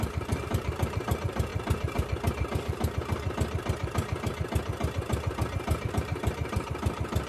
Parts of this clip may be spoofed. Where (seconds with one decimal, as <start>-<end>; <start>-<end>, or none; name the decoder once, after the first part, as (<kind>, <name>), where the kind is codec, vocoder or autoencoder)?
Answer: 0.0-1.5 (vocoder, BigVGAN v2); 5.9-7.3